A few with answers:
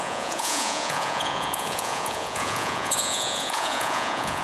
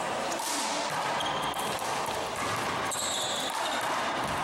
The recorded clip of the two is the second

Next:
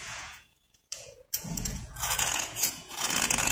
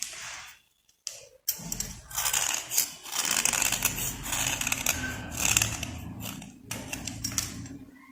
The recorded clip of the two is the second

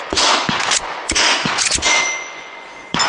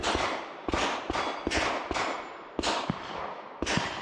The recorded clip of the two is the second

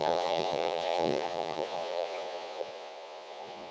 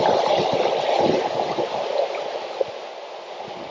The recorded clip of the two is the second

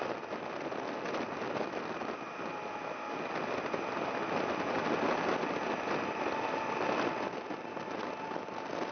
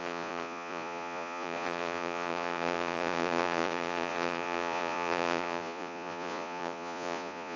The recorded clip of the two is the first